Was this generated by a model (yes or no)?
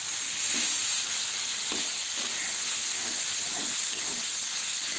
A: no